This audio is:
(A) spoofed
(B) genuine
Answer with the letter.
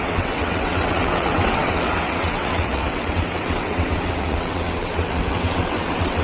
A